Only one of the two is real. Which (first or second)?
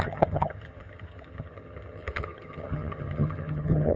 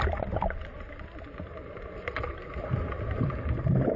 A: second